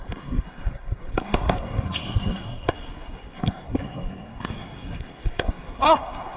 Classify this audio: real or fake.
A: fake